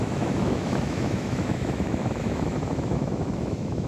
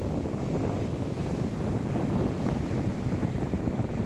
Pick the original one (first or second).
second